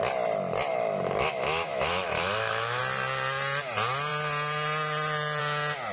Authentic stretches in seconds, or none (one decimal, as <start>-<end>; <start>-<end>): 0.0-0.7; 2.8-5.9